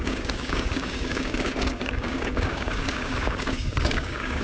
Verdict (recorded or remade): remade